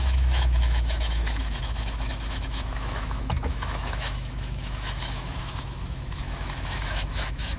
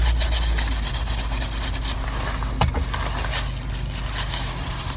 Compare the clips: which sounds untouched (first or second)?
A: second